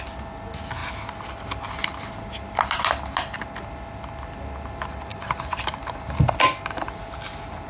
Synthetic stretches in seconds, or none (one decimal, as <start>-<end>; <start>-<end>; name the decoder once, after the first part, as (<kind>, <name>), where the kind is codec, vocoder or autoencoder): none